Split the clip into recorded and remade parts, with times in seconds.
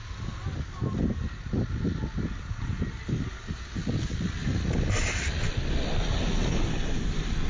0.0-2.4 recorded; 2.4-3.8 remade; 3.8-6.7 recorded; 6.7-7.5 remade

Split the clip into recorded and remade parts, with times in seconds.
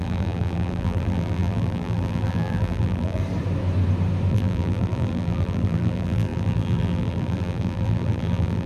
0.0-3.2 remade; 3.2-4.3 recorded; 4.3-8.7 remade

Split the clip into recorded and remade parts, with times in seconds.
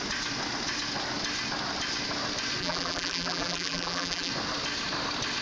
0.0-2.6 recorded; 2.6-4.3 remade; 4.3-5.4 recorded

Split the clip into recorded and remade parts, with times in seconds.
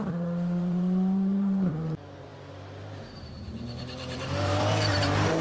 0.0-5.4 remade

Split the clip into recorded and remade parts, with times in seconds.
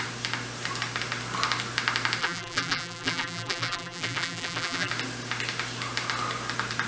0.0-2.2 recorded; 2.2-4.9 remade; 4.9-6.9 recorded